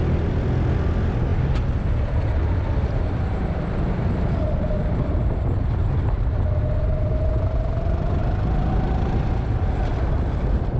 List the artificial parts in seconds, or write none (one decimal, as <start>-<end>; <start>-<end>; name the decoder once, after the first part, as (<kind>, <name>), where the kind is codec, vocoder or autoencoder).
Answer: none